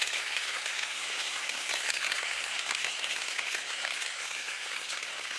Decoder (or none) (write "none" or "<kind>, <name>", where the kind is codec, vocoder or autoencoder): codec, SNAC